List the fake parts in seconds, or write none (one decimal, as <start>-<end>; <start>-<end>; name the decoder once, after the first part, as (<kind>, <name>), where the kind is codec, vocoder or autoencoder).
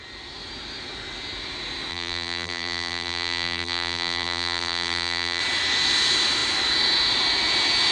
1.9-5.4 (vocoder, BigVGAN v2)